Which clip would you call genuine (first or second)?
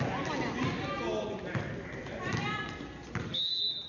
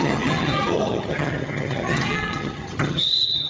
first